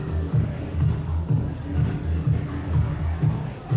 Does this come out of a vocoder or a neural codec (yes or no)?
yes